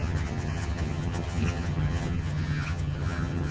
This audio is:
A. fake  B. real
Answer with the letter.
A